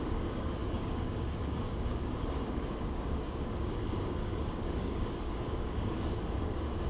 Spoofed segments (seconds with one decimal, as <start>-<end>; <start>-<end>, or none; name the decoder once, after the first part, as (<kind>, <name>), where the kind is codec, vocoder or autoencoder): 0.0-6.9 (codec, DAC)